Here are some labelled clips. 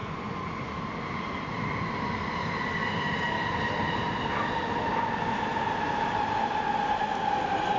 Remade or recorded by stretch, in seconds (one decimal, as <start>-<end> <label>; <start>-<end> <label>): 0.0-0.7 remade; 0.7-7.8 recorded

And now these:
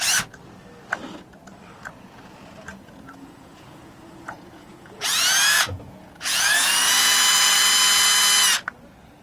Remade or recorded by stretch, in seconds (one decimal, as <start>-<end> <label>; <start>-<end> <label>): 0.0-2.7 recorded; 2.7-7.6 remade; 7.6-9.2 recorded

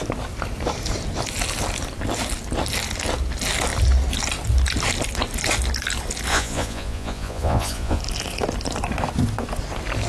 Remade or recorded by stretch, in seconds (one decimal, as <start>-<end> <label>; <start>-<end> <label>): 0.0-6.3 recorded; 6.3-8.0 remade; 8.0-10.1 recorded